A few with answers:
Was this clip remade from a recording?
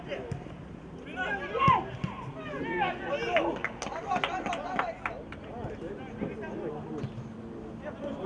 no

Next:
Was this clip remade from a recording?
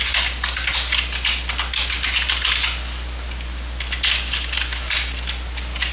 no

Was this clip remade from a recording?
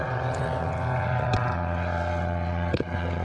yes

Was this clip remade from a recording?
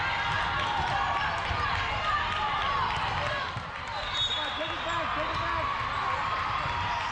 no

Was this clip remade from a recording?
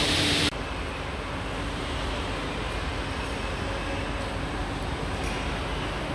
no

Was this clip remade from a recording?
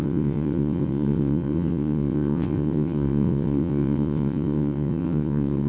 yes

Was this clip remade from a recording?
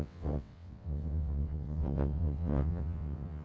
yes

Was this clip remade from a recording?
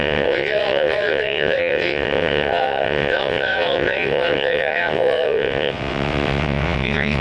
yes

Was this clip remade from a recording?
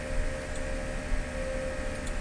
no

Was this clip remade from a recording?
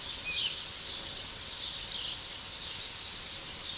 no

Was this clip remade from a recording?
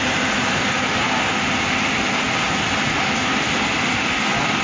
no